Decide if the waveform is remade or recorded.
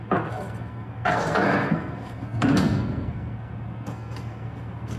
remade